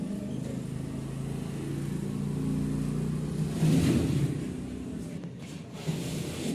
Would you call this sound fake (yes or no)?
no